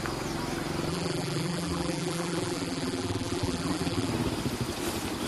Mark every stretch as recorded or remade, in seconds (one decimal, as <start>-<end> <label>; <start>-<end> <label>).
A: 0.0-0.9 recorded; 0.9-4.1 remade; 4.1-5.3 recorded